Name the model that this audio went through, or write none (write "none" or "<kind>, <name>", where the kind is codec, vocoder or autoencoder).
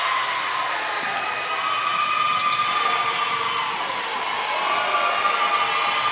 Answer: none